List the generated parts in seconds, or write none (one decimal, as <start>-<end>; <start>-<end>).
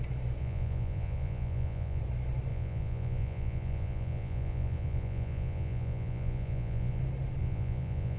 0.4-2.0; 2.5-7.0; 7.4-8.2